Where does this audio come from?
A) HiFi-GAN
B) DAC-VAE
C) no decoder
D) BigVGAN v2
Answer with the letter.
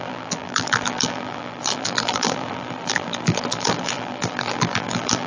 D